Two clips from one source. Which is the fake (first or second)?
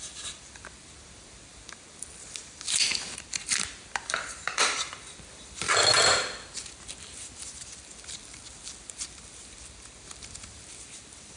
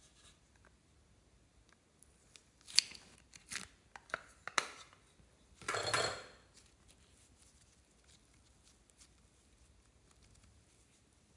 first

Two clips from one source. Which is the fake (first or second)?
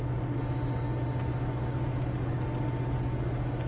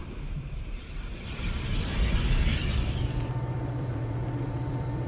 second